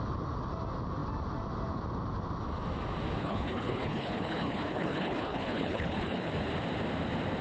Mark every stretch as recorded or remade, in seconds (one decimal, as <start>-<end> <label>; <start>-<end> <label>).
0.0-3.2 recorded; 3.2-6.3 remade; 6.3-7.4 recorded